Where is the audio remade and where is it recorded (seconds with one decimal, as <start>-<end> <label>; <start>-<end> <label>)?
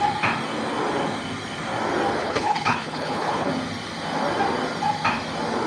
0.0-2.2 recorded; 2.2-3.5 remade; 3.5-5.7 recorded